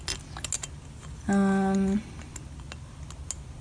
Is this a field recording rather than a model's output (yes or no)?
yes